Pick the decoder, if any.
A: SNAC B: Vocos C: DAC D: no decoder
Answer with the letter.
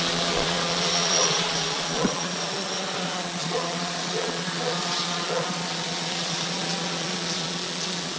B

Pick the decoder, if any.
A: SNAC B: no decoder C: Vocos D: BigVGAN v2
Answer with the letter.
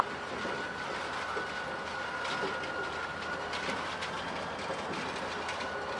B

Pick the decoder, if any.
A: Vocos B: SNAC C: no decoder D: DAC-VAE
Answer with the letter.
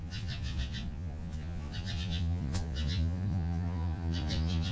A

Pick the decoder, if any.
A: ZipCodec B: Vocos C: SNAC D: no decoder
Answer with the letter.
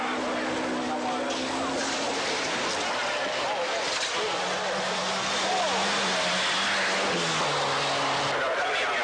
D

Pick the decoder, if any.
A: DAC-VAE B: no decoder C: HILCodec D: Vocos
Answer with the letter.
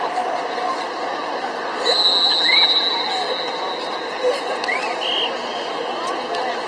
B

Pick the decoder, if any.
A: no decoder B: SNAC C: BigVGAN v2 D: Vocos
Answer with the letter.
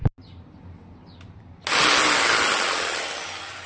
A